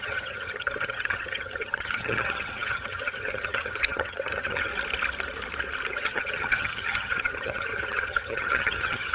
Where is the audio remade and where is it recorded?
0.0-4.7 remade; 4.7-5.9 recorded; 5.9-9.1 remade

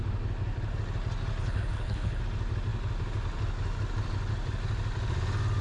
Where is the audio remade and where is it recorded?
0.0-1.4 recorded; 1.4-2.2 remade; 2.2-5.6 recorded

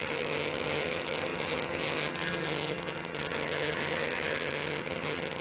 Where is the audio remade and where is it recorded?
0.0-5.4 remade

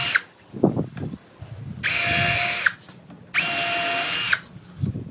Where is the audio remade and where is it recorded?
0.0-5.1 recorded

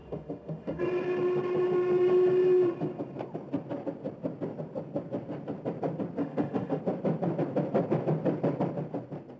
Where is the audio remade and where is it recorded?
0.0-0.8 remade; 0.8-6.2 recorded; 6.2-6.8 remade; 6.8-9.4 recorded

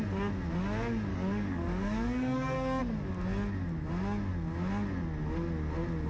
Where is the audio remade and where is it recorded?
0.0-1.1 recorded; 1.1-2.8 remade; 2.8-6.1 recorded

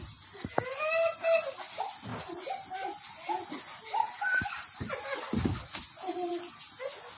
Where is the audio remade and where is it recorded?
0.0-7.2 recorded

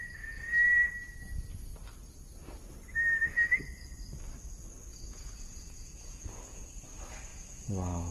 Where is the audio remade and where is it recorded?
0.0-4.9 recorded; 4.9-6.7 remade; 6.7-7.3 recorded; 7.3-8.1 remade